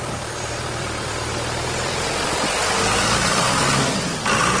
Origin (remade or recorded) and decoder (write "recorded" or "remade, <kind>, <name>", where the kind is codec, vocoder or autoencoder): remade, vocoder, BigVGAN v2